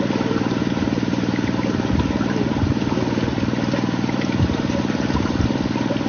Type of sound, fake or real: real